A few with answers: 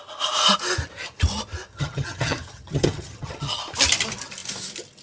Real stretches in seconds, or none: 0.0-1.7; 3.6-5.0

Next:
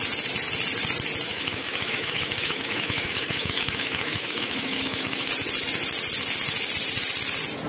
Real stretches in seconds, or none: 0.0-1.3; 5.3-7.7

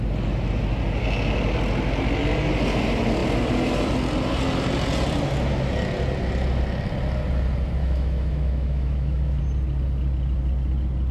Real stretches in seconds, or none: 0.0-7.8; 9.4-11.1

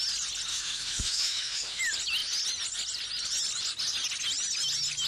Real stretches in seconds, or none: 0.0-0.5; 1.8-5.1